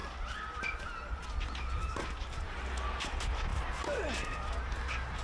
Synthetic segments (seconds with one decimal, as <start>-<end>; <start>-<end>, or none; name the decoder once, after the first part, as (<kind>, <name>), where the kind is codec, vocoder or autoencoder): none